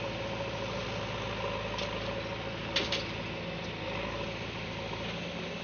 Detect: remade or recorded recorded